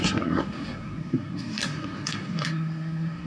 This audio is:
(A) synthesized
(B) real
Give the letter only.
A